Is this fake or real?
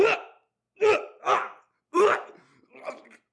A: real